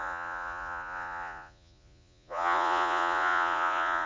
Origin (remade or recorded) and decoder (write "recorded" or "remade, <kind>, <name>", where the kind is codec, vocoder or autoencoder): remade, vocoder, Vocos